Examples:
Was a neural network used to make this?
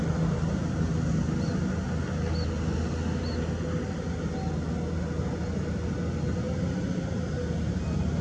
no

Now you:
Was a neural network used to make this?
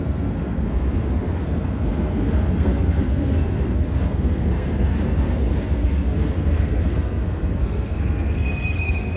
yes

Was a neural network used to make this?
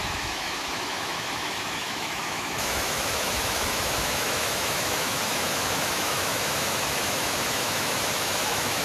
yes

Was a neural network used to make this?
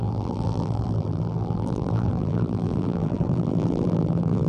yes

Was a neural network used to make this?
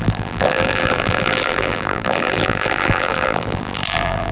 yes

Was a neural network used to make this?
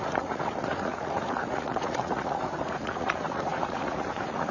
yes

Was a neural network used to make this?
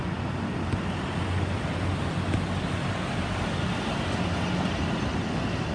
no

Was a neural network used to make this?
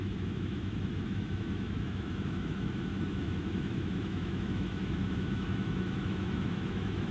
yes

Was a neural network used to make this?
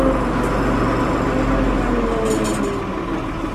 no